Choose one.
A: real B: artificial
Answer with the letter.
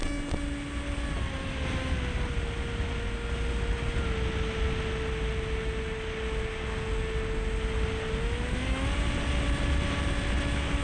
A